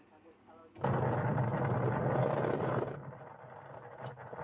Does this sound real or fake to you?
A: real